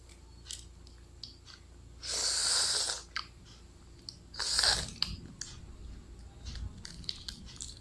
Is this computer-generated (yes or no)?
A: no